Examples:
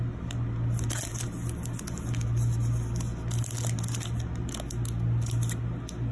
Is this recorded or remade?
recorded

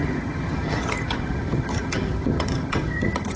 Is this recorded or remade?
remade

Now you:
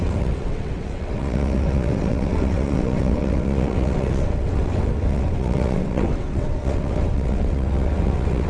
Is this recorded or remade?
remade